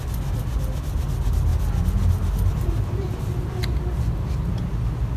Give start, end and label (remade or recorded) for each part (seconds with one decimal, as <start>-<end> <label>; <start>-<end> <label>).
0.0-5.2 recorded

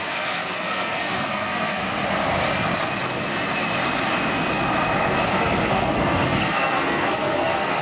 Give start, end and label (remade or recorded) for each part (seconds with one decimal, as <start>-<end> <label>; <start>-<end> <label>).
0.0-1.8 remade; 1.8-5.3 recorded; 5.3-7.8 remade

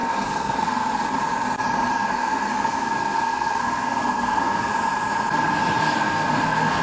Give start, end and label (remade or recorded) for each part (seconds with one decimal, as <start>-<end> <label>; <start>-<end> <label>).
0.0-1.0 remade; 1.0-1.9 recorded; 1.9-4.7 remade; 4.7-5.8 recorded; 5.8-6.8 remade

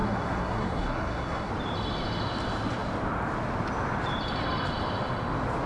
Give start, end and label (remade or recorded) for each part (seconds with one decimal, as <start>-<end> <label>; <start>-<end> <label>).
0.0-1.5 remade; 1.5-5.7 recorded

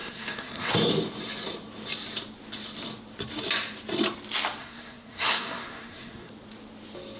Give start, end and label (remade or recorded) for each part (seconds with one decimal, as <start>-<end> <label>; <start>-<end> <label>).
0.0-0.7 remade; 0.7-4.6 recorded; 4.6-6.3 remade; 6.3-7.2 recorded